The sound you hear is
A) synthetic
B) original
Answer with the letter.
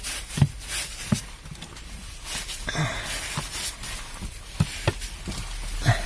B